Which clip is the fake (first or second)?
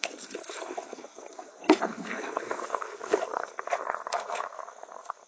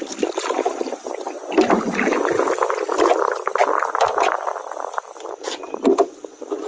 first